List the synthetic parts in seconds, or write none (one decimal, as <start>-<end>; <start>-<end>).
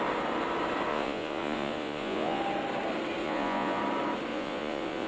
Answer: 0.9-2.4; 3.2-3.8; 4.3-5.1